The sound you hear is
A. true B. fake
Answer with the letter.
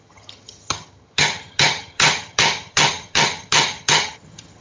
B